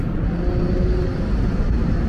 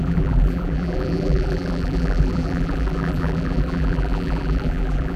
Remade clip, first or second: second